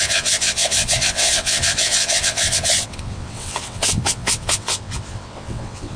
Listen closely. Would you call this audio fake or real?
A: fake